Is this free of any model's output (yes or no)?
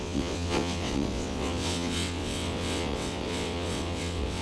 no